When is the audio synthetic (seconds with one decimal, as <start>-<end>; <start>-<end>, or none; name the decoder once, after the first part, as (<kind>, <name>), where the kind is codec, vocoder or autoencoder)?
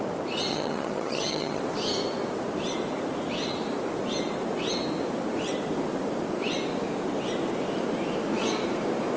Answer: 0.5-1.6 (vocoder, HiFi-GAN)